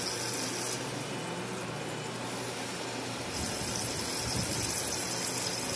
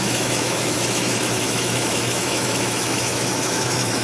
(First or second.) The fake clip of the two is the second